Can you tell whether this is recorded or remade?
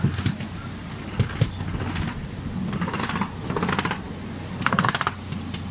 recorded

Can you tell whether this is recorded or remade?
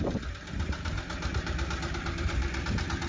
recorded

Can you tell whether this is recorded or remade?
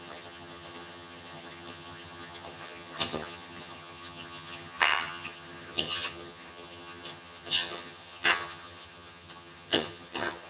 remade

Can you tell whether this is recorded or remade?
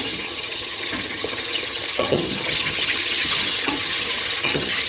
remade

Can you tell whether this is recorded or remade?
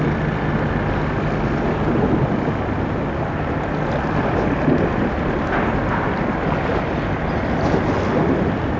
recorded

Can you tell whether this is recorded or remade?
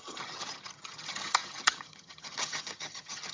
remade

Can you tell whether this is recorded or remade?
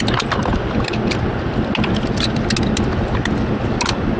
recorded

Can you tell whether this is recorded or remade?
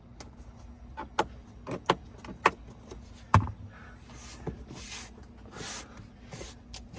recorded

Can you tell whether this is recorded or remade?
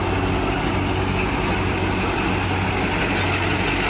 recorded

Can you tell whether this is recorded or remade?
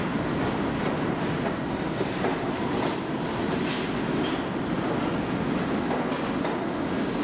recorded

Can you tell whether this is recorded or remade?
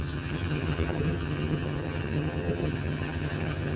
remade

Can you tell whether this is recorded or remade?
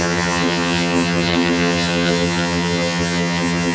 remade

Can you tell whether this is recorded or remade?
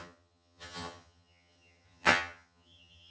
remade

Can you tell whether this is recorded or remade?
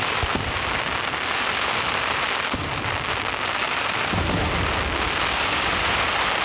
recorded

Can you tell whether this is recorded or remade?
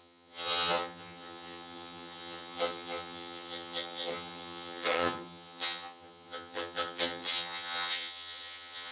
remade